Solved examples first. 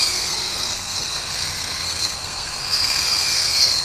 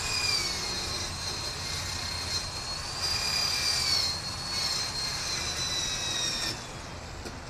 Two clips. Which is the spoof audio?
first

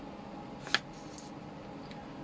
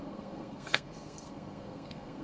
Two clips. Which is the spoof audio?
second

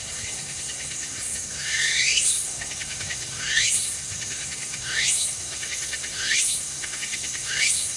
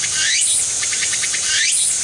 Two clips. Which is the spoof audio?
first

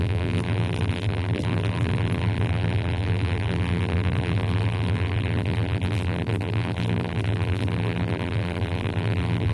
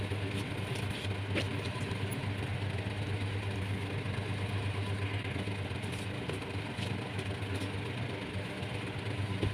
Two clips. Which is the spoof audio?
first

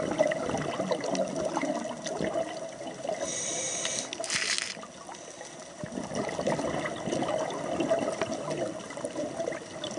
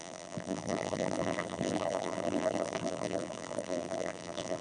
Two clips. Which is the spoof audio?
second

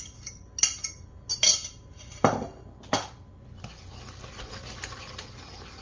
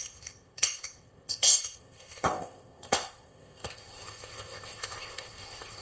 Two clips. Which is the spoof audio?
second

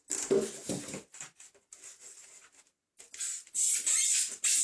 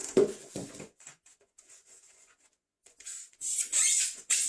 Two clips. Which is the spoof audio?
second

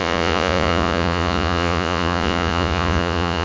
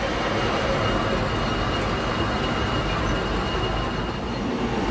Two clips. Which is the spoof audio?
first